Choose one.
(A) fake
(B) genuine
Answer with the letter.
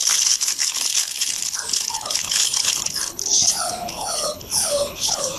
A